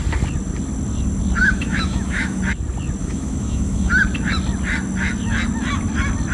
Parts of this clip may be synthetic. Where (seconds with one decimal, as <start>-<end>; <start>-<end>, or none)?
1.4-2.4; 3.0-3.9

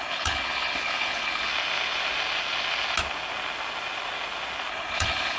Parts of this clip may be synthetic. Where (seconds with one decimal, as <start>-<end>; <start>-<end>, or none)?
0.0-1.5; 4.7-5.4

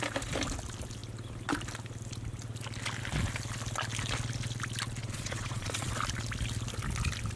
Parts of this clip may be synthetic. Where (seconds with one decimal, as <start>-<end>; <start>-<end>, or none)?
5.0-5.9

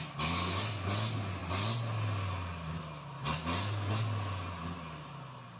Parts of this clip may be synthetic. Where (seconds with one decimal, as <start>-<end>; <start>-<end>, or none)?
none